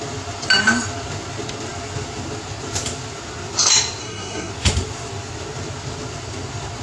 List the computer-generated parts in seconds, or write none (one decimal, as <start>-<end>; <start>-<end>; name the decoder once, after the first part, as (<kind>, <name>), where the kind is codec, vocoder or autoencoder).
4.0-4.5 (codec, SNAC)